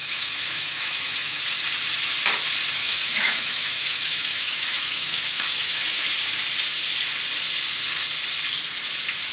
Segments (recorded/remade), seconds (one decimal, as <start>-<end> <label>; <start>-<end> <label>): 0.0-1.4 remade; 1.4-2.8 recorded; 2.8-6.1 remade; 6.1-9.3 recorded